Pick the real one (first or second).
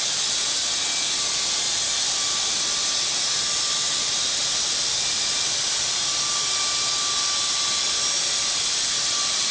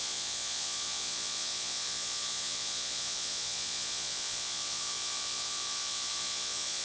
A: first